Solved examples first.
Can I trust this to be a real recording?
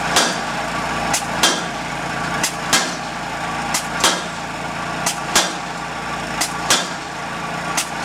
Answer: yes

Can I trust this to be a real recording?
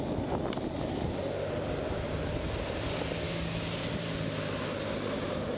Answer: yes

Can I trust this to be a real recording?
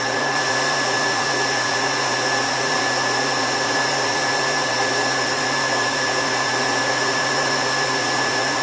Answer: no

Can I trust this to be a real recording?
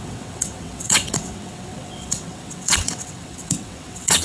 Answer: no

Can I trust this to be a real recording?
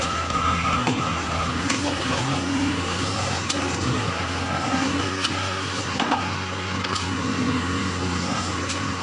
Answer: no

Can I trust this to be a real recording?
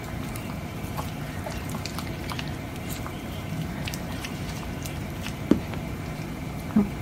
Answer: no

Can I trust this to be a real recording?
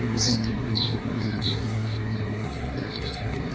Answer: no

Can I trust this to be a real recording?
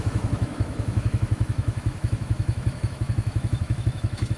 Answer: no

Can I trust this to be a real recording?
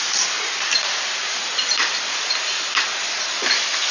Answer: yes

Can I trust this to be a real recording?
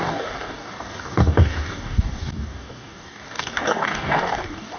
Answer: no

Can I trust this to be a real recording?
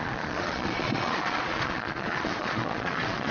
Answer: no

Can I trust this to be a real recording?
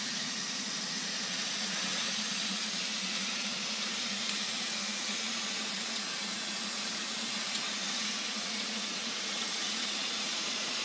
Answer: no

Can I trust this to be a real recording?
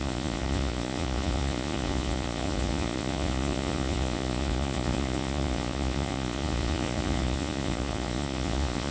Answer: no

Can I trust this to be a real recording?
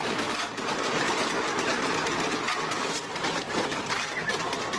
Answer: no